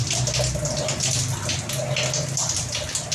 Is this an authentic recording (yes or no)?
yes